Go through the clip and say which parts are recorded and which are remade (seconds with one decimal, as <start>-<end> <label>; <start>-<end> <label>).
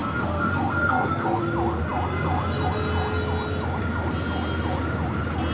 0.0-1.4 remade; 1.4-5.5 recorded